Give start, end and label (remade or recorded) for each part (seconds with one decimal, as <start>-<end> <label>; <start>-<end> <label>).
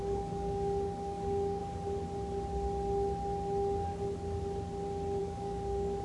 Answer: 0.0-1.6 remade; 1.6-5.2 recorded; 5.2-6.0 remade